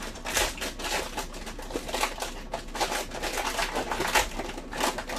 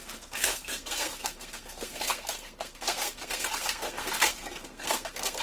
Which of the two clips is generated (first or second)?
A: second